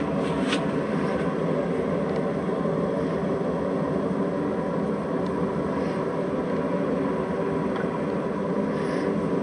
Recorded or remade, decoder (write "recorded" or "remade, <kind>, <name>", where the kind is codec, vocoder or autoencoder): recorded